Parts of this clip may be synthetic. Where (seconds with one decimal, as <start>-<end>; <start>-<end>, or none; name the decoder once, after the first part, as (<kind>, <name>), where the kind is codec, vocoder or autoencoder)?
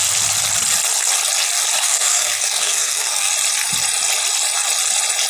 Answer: 1.8-3.3 (codec, SNAC)